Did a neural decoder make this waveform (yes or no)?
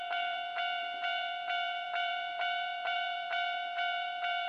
yes